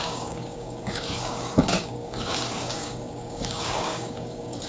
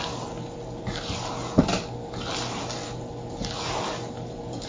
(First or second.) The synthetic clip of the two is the first